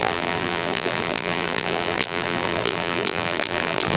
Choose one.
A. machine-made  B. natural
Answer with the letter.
A